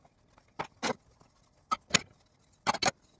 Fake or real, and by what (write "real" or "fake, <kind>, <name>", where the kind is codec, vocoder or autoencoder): real